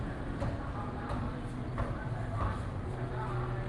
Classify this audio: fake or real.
real